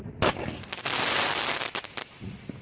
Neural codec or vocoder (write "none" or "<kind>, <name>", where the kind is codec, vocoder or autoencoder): none